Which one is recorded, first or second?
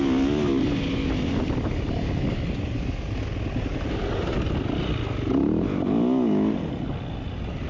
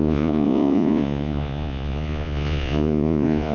first